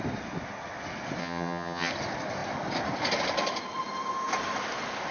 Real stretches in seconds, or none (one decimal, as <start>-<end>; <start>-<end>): 0.0-1.2; 1.9-5.1